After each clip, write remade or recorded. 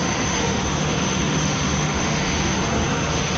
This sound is remade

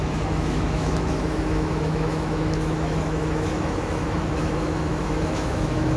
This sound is remade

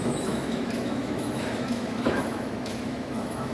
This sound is remade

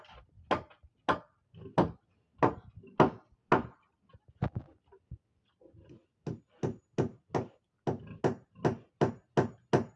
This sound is recorded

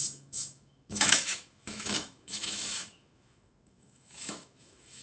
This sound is remade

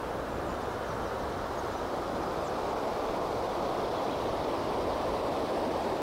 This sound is recorded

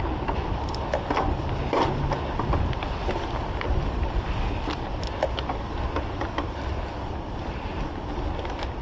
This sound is recorded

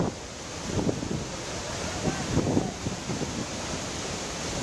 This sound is recorded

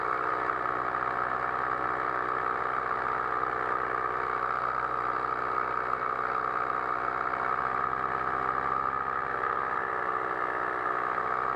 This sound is recorded